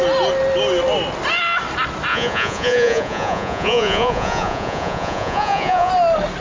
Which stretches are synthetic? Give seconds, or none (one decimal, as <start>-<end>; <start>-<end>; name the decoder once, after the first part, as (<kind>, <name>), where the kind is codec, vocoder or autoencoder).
2.1-5.9 (vocoder, Vocos)